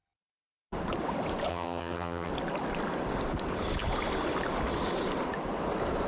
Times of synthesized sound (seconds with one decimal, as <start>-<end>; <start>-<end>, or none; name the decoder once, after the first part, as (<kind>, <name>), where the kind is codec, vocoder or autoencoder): 1.5-2.3 (vocoder, HiFi-GAN)